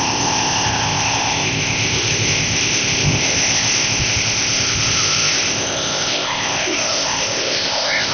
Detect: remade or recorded remade